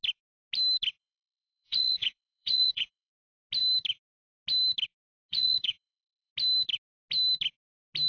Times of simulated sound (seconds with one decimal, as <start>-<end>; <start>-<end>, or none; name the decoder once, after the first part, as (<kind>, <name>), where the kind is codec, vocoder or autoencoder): 1.0-3.1 (vocoder, Vocos); 5.3-6.3